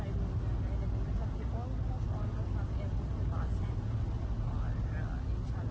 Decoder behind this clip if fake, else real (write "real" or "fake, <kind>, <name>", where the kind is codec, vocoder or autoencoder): real